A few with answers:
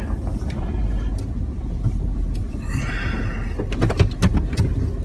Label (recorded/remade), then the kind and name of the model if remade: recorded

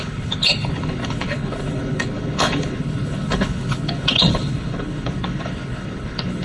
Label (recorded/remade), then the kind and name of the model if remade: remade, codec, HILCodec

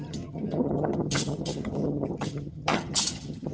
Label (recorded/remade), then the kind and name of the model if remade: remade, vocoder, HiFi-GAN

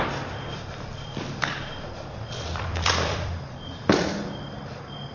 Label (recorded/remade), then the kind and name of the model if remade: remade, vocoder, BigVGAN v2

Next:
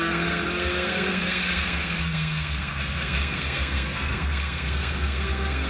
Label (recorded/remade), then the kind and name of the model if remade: remade, codec, SNAC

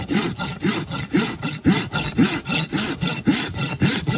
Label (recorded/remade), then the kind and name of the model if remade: recorded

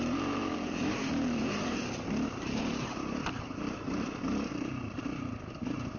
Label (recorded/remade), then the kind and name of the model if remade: remade, vocoder, BigVGAN v2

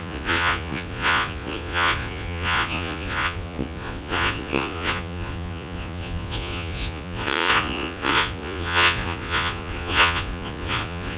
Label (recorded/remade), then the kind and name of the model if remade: remade, vocoder, Vocos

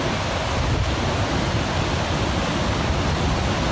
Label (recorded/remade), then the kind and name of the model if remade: recorded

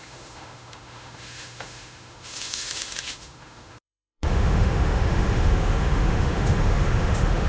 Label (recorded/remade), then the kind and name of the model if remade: remade, autoencoder, DAC-VAE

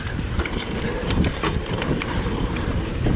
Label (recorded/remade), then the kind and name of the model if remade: remade, vocoder, BigVGAN v2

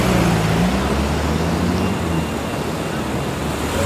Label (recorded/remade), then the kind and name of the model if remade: recorded